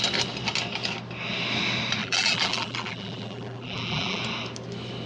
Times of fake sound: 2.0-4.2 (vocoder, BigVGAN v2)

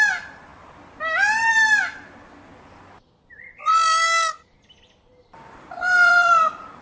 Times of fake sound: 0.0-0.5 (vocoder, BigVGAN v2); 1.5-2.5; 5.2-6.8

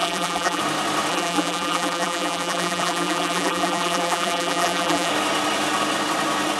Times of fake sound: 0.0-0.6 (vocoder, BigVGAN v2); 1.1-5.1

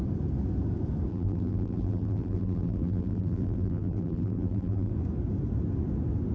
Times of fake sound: 1.1-4.9 (vocoder, BigVGAN v2)

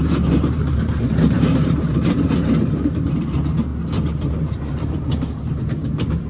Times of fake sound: 0.0-3.7 (vocoder, BigVGAN v2); 4.2-6.3

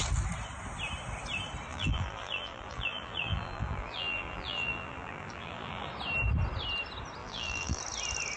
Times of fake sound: 1.7-5.9 (vocoder, BigVGAN v2); 7.2-7.8

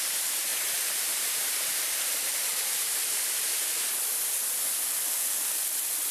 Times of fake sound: 0.5-4.2 (vocoder, BigVGAN v2)